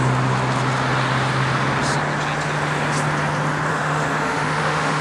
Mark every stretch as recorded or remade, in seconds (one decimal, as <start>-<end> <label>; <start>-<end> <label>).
0.0-3.7 recorded; 3.7-5.0 remade